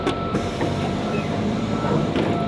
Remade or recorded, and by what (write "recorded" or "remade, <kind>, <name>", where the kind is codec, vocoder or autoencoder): remade, vocoder, BigVGAN v2